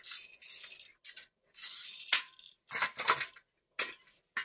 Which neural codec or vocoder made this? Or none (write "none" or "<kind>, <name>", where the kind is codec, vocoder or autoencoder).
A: none